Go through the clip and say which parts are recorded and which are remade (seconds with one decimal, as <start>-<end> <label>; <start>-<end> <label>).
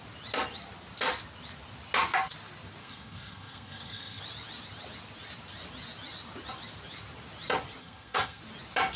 0.0-2.8 recorded; 2.8-4.2 remade; 4.2-7.8 recorded; 7.8-8.4 remade; 8.4-9.0 recorded